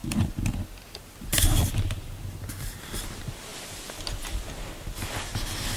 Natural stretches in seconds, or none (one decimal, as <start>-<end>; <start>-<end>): 2.9-5.8